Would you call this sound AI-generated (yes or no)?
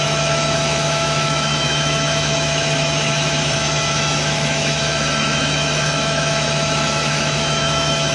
yes